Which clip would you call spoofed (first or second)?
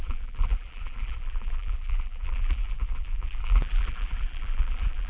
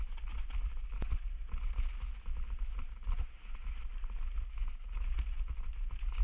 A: first